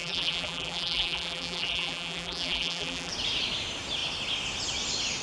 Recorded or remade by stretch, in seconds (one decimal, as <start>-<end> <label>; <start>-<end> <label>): 0.0-3.1 remade; 3.1-5.2 recorded